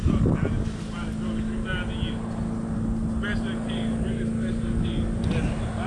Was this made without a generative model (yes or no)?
yes